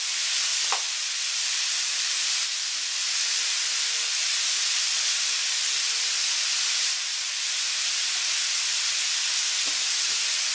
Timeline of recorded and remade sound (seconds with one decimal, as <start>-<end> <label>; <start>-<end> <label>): 0.0-0.5 recorded; 0.5-2.3 remade; 2.3-10.5 recorded